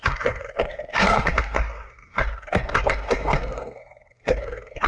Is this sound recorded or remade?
remade